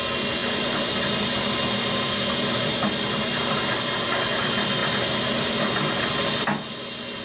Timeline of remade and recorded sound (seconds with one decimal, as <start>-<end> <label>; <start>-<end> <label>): 0.0-7.2 recorded